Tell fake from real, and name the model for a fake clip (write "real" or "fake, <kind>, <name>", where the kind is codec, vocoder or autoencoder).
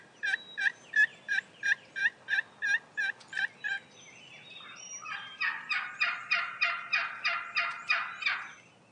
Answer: real